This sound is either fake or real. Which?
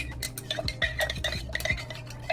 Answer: real